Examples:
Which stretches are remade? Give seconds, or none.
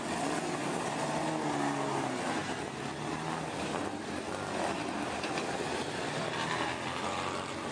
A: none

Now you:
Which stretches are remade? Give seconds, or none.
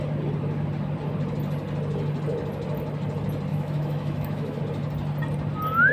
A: 3.5-4.6 (autoencoder, DAC-VAE)